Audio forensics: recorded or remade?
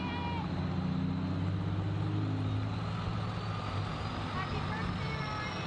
recorded